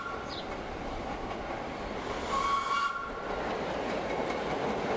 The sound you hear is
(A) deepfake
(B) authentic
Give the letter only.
B